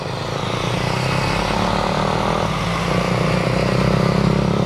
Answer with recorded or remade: recorded